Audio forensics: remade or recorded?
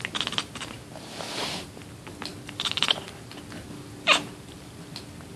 recorded